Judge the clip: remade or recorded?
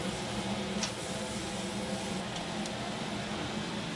recorded